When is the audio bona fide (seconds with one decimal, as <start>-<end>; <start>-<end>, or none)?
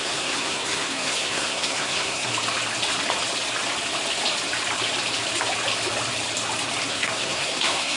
2.3-6.9